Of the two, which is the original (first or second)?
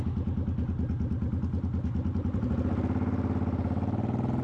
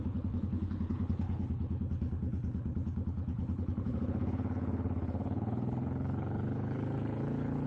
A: first